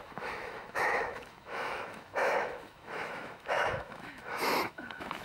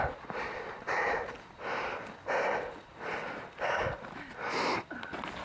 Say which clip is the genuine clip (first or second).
second